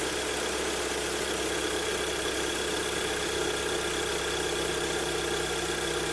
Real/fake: real